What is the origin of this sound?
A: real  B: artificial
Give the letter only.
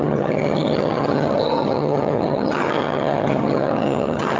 B